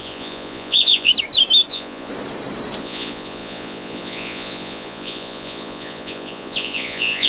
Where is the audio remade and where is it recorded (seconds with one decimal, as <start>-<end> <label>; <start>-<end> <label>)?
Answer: 0.0-1.1 remade; 1.1-1.7 recorded; 1.7-2.1 remade; 2.1-2.8 recorded; 2.8-7.3 remade